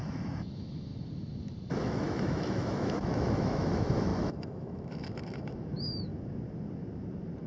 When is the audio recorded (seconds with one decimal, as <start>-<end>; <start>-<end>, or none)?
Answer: 0.9-1.7; 6.1-7.5